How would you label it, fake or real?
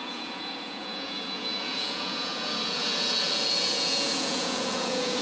fake